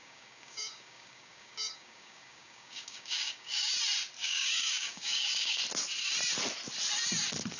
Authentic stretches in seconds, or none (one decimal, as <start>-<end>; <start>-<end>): 3.7-4.2; 5.6-7.6